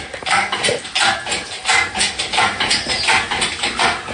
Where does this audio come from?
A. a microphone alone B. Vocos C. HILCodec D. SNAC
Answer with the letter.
A